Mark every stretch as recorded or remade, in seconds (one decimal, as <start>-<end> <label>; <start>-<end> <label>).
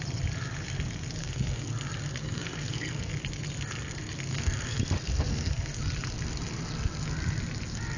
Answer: 0.0-1.2 recorded; 1.2-1.7 remade; 1.7-2.2 recorded; 2.2-3.1 remade; 3.1-4.3 recorded; 4.3-4.8 remade; 4.8-5.3 recorded; 5.3-5.8 remade; 5.8-8.0 recorded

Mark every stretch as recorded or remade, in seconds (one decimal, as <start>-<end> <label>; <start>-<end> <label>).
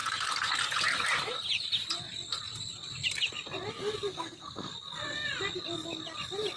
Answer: 0.0-4.1 recorded; 4.1-4.7 remade; 4.7-6.6 recorded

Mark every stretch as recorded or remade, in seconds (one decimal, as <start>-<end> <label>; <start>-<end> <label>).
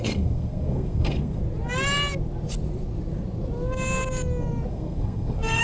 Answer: 0.0-1.4 remade; 1.4-4.7 recorded; 4.7-5.6 remade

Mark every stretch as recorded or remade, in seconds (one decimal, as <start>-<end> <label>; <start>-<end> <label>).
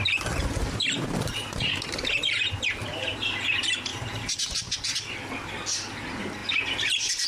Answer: 0.0-0.4 recorded; 0.4-2.8 remade; 2.8-3.9 recorded; 3.9-5.1 remade; 5.1-7.3 recorded